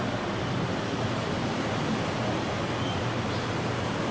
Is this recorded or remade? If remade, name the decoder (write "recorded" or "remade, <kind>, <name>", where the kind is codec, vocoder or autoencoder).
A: recorded